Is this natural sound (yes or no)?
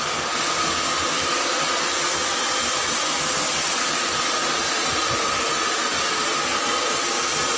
yes